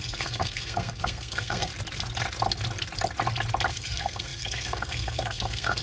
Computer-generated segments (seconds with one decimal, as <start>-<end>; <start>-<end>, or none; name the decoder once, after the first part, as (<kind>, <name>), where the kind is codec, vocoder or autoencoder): 0.0-1.7 (codec, SNAC); 3.7-5.8